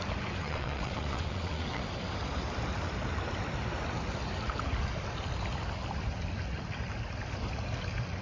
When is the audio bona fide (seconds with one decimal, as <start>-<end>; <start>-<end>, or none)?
0.0-0.4; 1.8-8.2